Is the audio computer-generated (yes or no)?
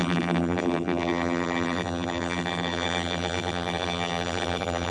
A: yes